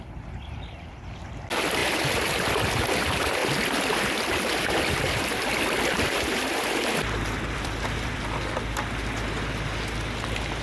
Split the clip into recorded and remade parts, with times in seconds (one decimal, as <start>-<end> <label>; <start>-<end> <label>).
0.0-3.4 recorded; 3.4-8.2 remade; 8.2-10.6 recorded